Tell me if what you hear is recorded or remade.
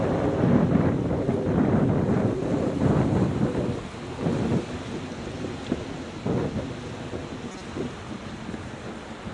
recorded